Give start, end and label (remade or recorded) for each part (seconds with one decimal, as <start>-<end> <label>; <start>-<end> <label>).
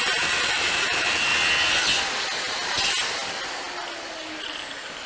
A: 0.0-1.3 remade; 1.3-4.4 recorded; 4.4-5.1 remade